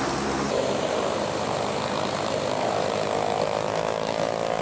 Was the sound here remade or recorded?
remade